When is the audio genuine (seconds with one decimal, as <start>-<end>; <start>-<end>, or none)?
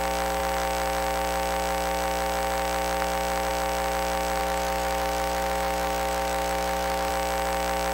0.0-4.4; 7.1-7.9